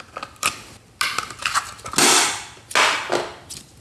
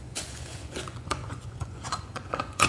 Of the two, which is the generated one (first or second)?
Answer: second